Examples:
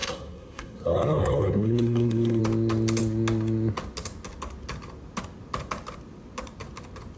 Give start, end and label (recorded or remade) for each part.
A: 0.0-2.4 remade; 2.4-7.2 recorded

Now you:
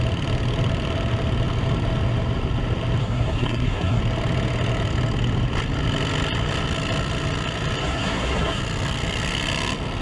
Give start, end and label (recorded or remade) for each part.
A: 0.0-3.0 recorded; 3.0-4.0 remade; 4.0-7.8 recorded; 7.8-8.6 remade; 8.6-10.0 recorded

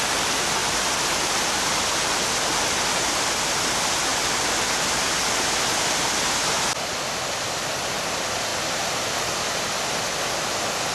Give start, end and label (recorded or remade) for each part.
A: 0.0-0.6 recorded; 0.6-1.3 remade; 1.3-10.9 recorded

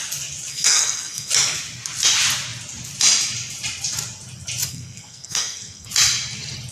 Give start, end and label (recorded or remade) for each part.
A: 0.0-0.5 recorded; 0.5-1.3 remade; 1.3-4.7 recorded; 4.7-5.9 remade; 5.9-6.7 recorded